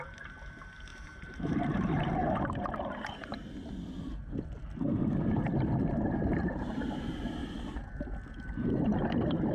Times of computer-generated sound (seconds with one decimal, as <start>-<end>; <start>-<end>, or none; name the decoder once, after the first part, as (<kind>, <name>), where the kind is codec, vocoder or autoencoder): 0.0-2.2 (vocoder, BigVGAN v2); 6.3-7.4